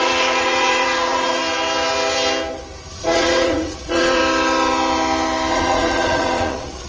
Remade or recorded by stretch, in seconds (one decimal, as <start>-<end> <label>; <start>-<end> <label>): 0.0-1.4 remade; 1.4-2.9 recorded; 2.9-4.2 remade; 4.2-5.5 recorded; 5.5-6.9 remade